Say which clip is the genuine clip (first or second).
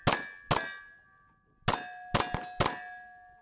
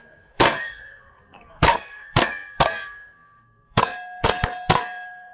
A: first